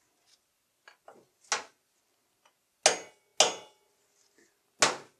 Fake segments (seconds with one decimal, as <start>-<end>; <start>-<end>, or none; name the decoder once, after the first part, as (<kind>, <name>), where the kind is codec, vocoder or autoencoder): none

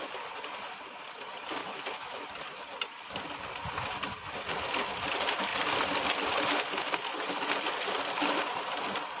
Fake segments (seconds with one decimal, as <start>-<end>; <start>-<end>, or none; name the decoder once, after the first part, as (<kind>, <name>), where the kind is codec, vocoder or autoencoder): 1.6-2.2 (autoencoder, DAC-VAE)

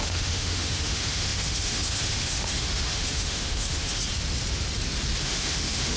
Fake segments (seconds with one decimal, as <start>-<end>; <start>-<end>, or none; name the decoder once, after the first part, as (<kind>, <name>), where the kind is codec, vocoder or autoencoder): 0.0-4.0 (autoencoder, DAC-VAE); 5.2-6.0

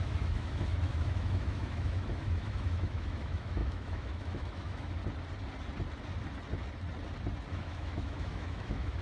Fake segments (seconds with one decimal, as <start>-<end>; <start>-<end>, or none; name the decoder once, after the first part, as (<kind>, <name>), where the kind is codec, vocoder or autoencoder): 0.0-5.0 (autoencoder, DAC-VAE); 7.5-9.0

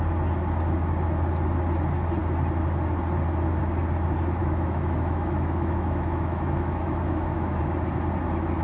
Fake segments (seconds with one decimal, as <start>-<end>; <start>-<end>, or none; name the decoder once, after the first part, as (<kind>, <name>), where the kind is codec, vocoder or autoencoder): 4.4-7.6 (autoencoder, DAC-VAE)